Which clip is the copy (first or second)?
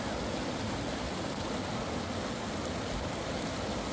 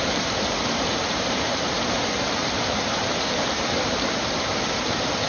second